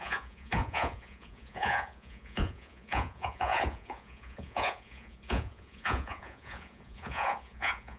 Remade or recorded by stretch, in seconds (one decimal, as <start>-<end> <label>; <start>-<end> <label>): 0.0-8.0 remade